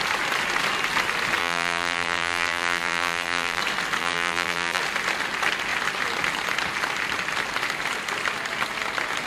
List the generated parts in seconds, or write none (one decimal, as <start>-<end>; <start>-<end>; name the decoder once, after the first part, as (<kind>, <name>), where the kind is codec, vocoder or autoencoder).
1.4-3.6 (vocoder, BigVGAN v2); 4.0-4.8